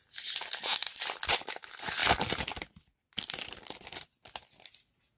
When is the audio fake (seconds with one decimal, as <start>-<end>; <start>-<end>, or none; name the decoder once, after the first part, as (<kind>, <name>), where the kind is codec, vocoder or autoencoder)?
none